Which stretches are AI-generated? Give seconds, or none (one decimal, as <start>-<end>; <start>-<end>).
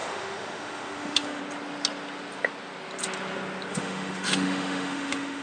0.0-1.4; 3.7-5.4